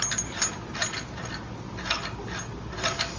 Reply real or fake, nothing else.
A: real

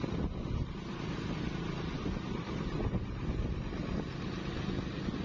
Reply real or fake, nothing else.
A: real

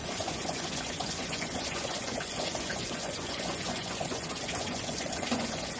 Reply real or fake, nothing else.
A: fake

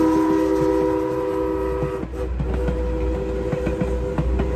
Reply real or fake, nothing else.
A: real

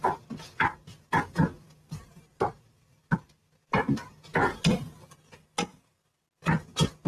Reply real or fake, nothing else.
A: real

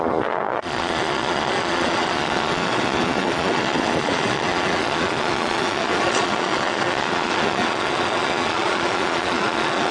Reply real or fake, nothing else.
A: fake